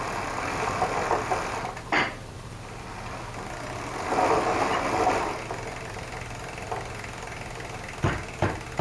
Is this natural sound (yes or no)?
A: yes